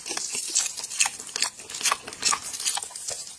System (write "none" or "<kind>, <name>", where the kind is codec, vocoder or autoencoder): none